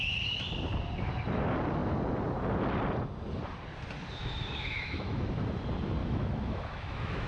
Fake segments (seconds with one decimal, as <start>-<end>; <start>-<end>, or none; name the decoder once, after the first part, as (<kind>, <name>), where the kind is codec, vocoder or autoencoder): 4.2-5.5 (autoencoder, DAC-VAE); 6.0-7.3